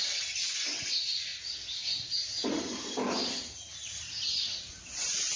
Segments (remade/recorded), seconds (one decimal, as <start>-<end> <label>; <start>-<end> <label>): 0.0-5.4 recorded